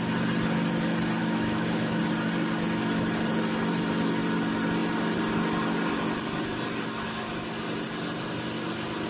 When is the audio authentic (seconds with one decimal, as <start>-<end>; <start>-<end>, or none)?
0.0-1.2; 2.0-9.1